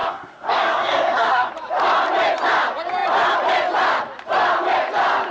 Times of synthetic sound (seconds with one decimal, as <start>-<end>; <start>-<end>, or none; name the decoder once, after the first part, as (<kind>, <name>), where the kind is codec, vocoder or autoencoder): 0.0-1.5 (codec, SNAC)

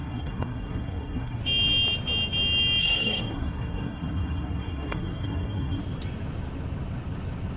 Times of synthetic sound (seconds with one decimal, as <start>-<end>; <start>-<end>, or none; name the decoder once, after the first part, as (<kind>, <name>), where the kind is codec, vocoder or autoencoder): 0.0-1.4 (codec, SNAC); 2.8-5.8